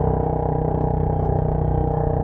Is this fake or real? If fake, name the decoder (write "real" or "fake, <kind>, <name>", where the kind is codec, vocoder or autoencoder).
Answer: fake, codec, DAC